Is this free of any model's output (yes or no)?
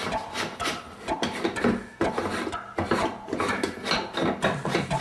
yes